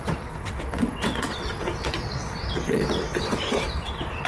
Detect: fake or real fake